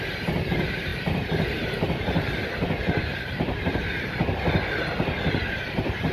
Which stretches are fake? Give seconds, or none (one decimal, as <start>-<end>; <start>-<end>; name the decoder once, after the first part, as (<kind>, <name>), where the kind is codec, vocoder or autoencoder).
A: 0.0-0.9 (vocoder, BigVGAN v2); 1.6-2.4; 3.0-3.8; 5.5-6.1